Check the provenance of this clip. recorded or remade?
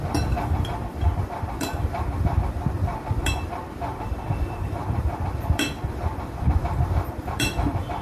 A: remade